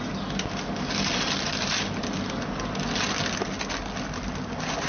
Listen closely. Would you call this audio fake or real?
real